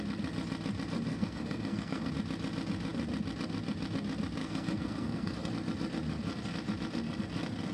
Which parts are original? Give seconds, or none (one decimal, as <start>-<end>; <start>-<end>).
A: 0.0-1.1; 2.1-4.4; 5.5-7.7